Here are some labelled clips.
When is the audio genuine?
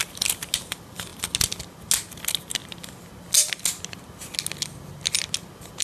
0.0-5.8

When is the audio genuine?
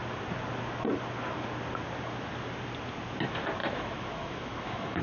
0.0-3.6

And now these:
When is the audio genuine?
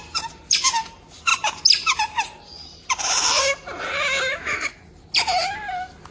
0.0-4.3; 4.8-6.1